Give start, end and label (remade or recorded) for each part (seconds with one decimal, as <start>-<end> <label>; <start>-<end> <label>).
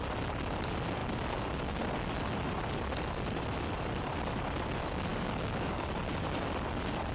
0.0-5.1 recorded; 5.1-5.9 remade; 5.9-7.1 recorded